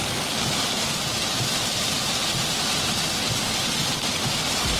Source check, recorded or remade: recorded